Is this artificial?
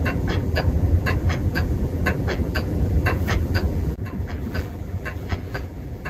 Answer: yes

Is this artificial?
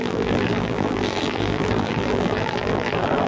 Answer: yes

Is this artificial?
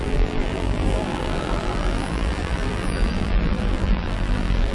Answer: yes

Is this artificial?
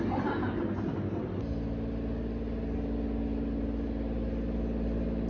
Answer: no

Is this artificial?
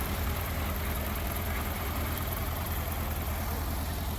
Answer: yes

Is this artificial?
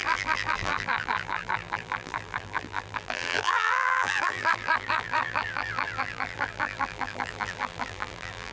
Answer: yes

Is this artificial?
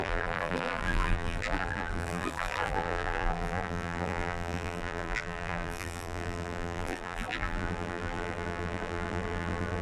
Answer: yes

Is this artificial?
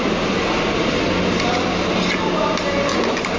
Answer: no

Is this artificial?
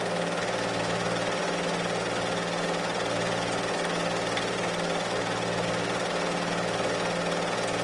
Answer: no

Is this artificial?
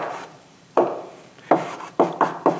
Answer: yes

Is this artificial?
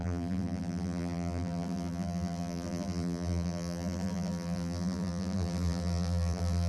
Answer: yes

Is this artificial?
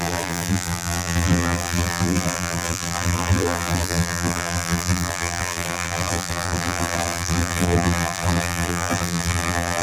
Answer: yes